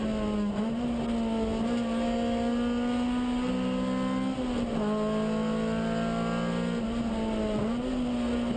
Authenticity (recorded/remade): recorded